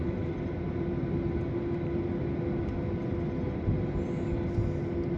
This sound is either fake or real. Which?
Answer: real